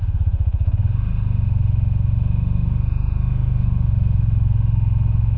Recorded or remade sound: remade